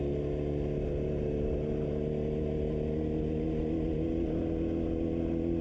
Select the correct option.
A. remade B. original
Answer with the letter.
B